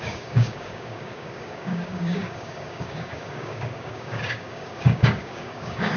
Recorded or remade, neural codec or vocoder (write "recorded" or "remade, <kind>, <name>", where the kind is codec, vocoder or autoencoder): remade, codec, DAC